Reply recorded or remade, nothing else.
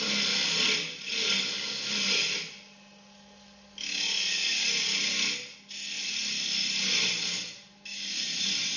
recorded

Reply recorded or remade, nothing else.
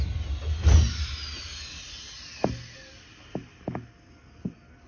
recorded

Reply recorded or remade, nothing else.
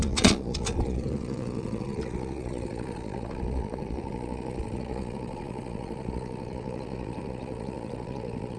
remade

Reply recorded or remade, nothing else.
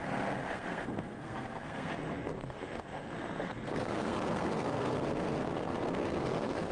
remade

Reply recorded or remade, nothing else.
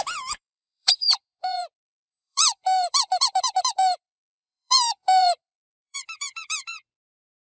remade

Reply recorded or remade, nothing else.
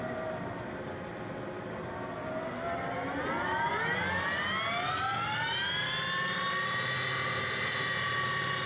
recorded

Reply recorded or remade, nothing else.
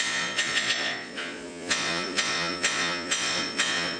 remade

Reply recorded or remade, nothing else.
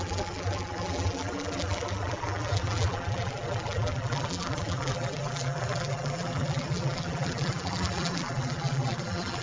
remade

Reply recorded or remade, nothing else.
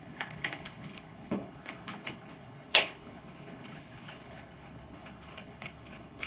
remade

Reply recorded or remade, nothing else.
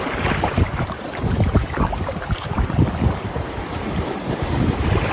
remade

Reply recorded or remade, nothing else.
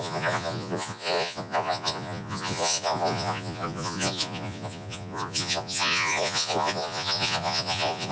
remade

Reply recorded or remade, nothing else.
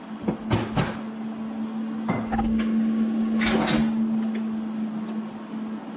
recorded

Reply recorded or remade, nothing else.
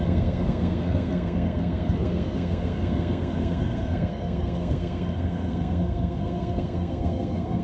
remade